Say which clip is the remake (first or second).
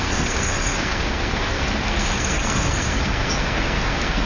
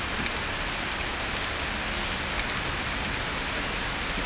first